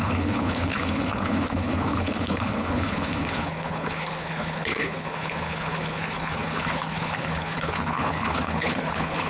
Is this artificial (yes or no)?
yes